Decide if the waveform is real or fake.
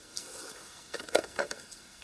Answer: fake